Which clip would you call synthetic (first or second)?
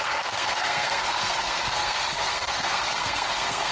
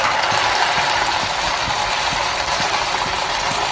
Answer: first